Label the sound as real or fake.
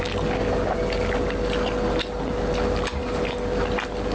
real